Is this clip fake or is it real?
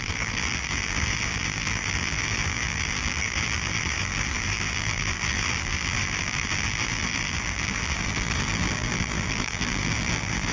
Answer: fake